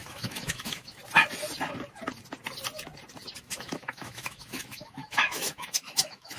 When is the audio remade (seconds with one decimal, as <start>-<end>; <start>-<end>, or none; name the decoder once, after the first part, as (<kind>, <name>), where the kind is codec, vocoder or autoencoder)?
0.0-1.0 (autoencoder, DAC-VAE); 3.4-6.4